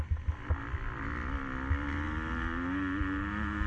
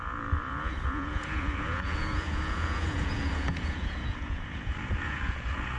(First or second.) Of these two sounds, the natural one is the first